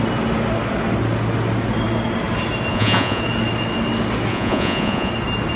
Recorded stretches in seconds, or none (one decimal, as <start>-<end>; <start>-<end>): 0.0-2.7; 3.2-4.3; 5.1-5.6